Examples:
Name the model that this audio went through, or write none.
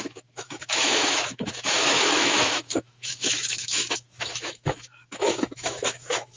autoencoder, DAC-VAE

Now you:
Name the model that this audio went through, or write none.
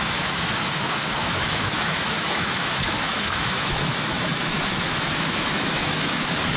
autoencoder, DAC-VAE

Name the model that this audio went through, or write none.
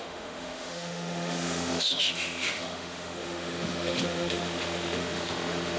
autoencoder, DAC-VAE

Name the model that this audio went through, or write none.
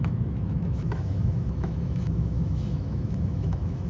autoencoder, DAC-VAE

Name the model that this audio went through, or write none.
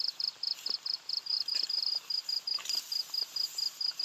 none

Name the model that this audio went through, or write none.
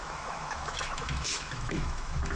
autoencoder, DAC-VAE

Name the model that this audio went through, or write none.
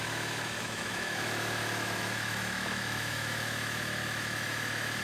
autoencoder, DAC-VAE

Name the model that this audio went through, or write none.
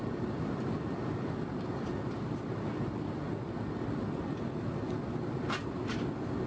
none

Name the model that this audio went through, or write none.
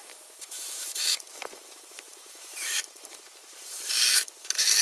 autoencoder, DAC-VAE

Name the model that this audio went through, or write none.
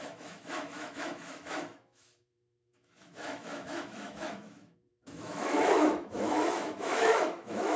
autoencoder, DAC-VAE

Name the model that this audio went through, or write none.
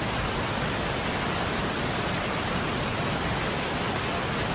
none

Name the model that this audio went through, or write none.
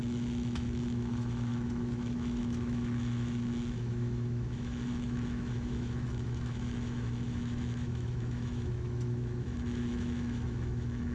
autoencoder, DAC-VAE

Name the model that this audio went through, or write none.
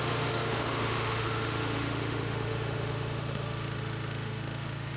autoencoder, DAC-VAE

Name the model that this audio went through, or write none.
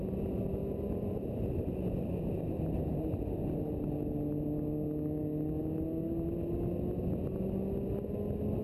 none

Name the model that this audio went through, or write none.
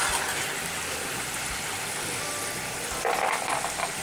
none